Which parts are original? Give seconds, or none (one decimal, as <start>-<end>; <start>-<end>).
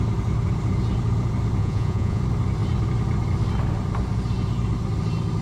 0.0-1.6; 2.2-5.4